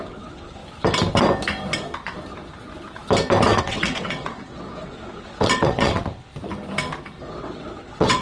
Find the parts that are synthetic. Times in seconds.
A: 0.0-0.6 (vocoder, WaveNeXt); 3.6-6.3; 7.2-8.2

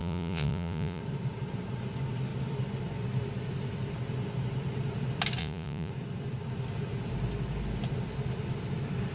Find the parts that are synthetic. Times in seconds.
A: 0.0-1.0 (vocoder, Vocos); 5.4-5.9

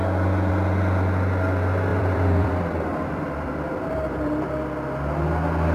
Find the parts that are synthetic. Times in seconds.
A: 1.9-4.4 (vocoder, BigVGAN v2)

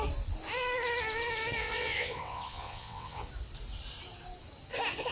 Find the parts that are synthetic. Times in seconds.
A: 1.6-3.3 (vocoder, WaveNeXt)

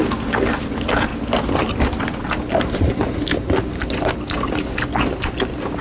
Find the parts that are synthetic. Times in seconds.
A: none

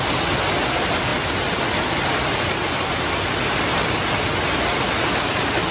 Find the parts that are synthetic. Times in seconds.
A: none

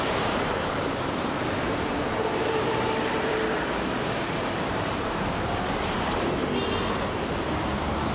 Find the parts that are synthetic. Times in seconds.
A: 0.0-6.4 (vocoder, BigVGAN v2); 7.0-8.1